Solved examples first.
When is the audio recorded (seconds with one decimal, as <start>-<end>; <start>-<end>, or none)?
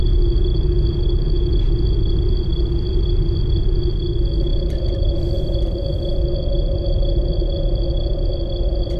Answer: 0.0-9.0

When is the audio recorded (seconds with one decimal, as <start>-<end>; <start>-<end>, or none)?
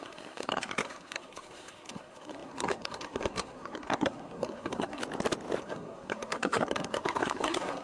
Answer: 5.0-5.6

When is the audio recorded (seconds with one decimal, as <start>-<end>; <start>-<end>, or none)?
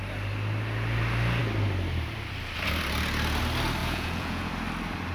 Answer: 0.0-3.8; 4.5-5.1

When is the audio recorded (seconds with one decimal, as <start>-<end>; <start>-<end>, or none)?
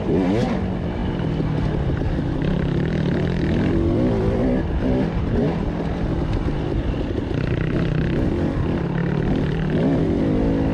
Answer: 0.0-10.7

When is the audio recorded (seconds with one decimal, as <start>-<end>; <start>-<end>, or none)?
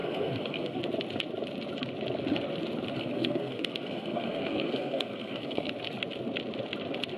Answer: 0.8-2.9; 5.7-7.2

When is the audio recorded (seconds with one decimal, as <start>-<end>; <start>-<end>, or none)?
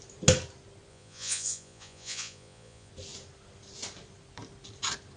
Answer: 0.0-0.9; 2.9-5.2